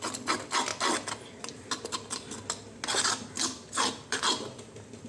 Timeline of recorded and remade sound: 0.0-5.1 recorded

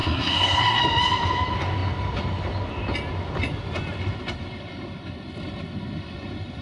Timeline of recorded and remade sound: 0.0-0.8 remade; 0.8-6.6 recorded

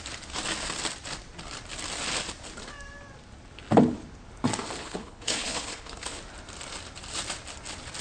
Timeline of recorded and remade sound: 0.0-4.8 recorded; 4.8-6.2 remade; 6.2-8.0 recorded

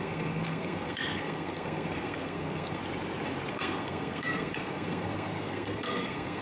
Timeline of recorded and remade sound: 0.0-2.8 remade; 2.8-3.5 recorded; 3.5-6.4 remade

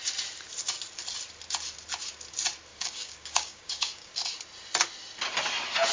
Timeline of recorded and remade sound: 0.0-2.7 recorded; 2.7-4.1 remade; 4.1-5.9 recorded

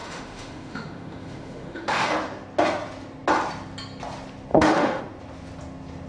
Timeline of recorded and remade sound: 0.0-2.1 remade; 2.1-4.5 recorded; 4.5-5.0 remade; 5.0-6.1 recorded

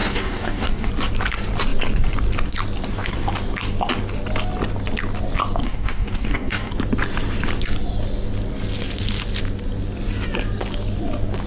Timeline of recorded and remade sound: 0.0-0.9 remade; 0.9-5.6 recorded; 5.6-6.7 remade; 6.7-11.5 recorded